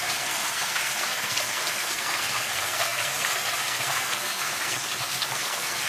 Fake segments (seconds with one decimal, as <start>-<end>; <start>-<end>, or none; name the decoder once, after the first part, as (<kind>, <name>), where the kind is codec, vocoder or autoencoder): 0.0-5.9 (codec, SNAC)